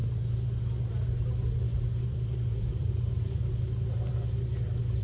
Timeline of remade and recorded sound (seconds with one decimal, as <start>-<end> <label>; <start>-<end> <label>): 0.0-0.9 remade; 0.9-1.7 recorded; 1.7-5.0 remade